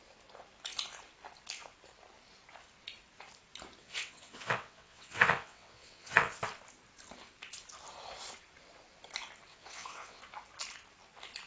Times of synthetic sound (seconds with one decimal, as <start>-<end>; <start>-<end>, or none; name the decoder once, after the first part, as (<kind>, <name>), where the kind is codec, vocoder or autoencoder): 3.8-6.4 (vocoder, WaveNeXt); 9.5-10.2